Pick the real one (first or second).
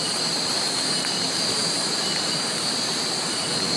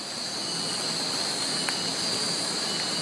second